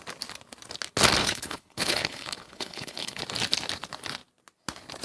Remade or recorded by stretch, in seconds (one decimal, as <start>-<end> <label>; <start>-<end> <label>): 0.0-1.2 recorded; 1.2-3.2 remade; 3.2-5.0 recorded